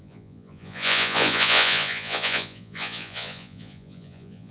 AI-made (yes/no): yes